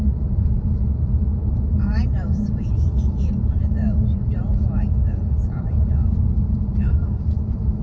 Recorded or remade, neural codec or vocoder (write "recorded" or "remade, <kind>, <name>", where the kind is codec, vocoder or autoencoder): remade, vocoder, BigVGAN v2